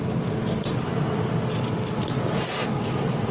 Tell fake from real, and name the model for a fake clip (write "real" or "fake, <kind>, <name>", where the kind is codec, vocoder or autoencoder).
real